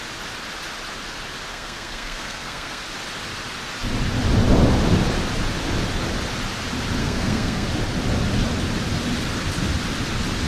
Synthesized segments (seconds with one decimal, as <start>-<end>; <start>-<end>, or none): 1.5-2.8; 7.0-7.7